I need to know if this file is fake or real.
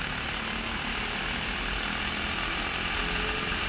real